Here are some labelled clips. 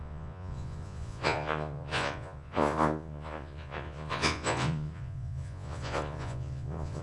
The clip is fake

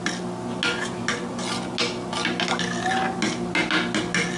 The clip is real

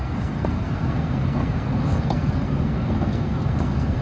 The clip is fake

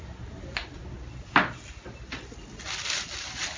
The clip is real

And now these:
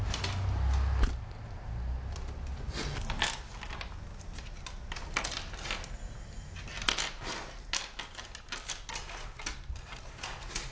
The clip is real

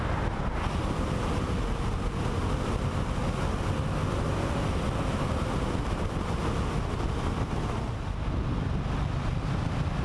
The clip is real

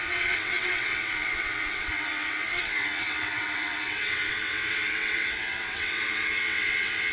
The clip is fake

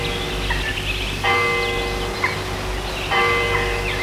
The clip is real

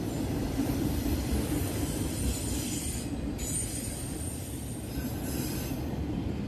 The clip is fake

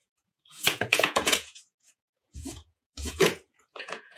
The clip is fake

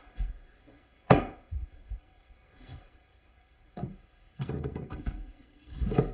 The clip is fake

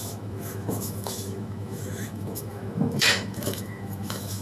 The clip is fake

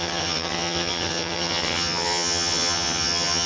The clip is fake